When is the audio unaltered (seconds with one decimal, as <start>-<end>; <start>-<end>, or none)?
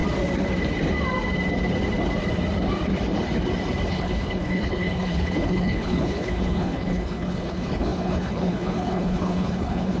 0.0-3.9